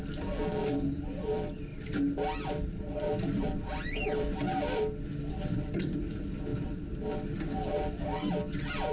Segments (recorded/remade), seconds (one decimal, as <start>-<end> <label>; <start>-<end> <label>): 0.0-8.9 recorded